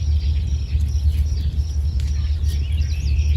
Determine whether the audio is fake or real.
real